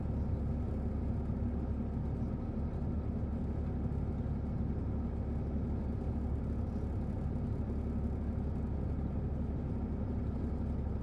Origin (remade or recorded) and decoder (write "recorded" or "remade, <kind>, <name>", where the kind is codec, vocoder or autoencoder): recorded